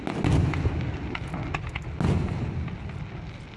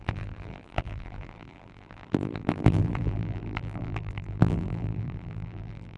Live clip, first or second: first